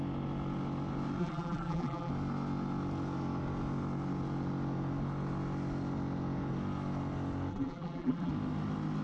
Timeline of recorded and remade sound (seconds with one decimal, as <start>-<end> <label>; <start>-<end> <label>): 0.0-1.2 recorded; 1.2-2.1 remade; 2.1-7.5 recorded; 7.5-8.3 remade; 8.3-9.0 recorded